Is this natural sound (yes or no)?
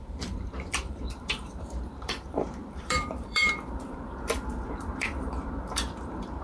no